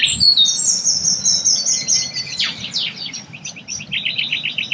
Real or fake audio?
real